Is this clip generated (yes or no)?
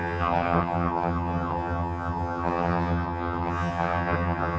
yes